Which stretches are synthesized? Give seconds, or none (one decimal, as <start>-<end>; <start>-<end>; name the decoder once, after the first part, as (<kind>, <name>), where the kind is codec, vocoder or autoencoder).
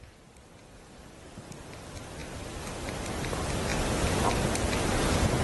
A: none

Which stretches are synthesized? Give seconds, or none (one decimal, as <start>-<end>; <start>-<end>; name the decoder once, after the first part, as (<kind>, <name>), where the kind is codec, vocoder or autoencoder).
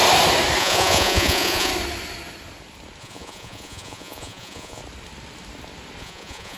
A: 0.6-1.7 (vocoder, Vocos); 3.0-4.8; 6.0-6.6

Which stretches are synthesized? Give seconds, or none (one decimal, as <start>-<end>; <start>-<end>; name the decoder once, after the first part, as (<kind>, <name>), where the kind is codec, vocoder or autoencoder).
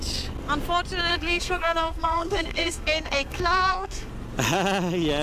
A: 1.1-4.1 (codec, SNAC)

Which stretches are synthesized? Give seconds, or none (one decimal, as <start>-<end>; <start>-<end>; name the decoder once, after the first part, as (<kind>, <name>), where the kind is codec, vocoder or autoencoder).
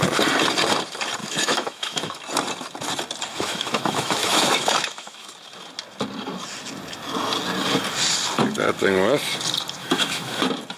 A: 1.2-2.2 (autoencoder, DAC-VAE); 3.3-5.3; 9.8-10.4